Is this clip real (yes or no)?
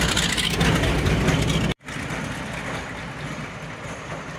yes